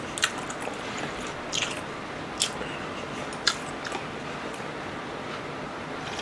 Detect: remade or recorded recorded